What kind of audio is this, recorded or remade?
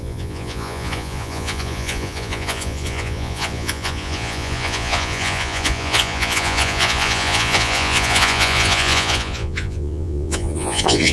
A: remade